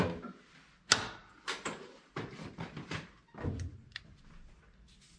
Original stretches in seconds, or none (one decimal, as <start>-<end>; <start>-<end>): 0.0-1.2; 3.2-5.2